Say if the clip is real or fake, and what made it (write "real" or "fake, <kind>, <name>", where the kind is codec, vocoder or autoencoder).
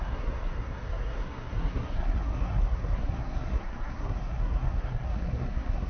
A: fake, codec, SNAC